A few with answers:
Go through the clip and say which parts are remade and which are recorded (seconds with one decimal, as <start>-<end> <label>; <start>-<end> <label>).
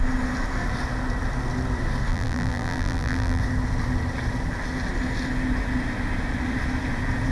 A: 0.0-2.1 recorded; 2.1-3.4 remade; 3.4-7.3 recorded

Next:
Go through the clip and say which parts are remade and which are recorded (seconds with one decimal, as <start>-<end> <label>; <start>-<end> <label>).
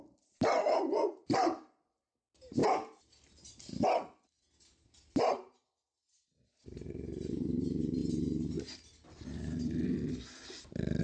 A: 0.0-2.6 remade; 2.6-4.6 recorded; 4.6-8.0 remade; 8.0-11.0 recorded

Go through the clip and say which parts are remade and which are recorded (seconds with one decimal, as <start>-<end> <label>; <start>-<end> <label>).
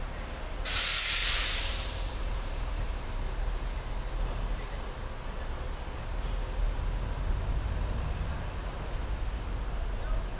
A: 0.0-1.2 recorded; 1.2-3.3 remade; 3.3-10.4 recorded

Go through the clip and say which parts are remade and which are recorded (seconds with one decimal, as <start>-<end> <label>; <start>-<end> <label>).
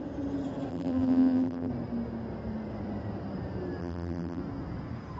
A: 0.0-0.7 recorded; 0.7-1.7 remade; 1.7-3.8 recorded; 3.8-4.4 remade; 4.4-5.2 recorded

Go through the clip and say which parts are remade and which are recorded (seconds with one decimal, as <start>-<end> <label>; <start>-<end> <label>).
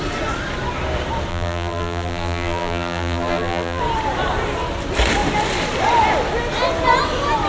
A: 0.0-1.3 recorded; 1.3-3.8 remade; 3.8-7.5 recorded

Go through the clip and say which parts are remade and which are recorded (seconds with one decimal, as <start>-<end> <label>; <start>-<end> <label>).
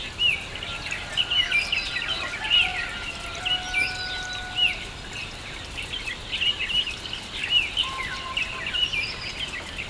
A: 0.0-9.9 recorded